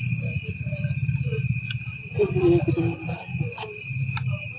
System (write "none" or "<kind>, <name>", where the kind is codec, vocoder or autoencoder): none